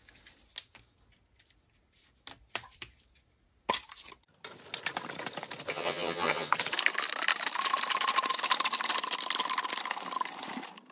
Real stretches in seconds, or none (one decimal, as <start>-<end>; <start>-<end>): 0.0-5.7; 6.5-10.9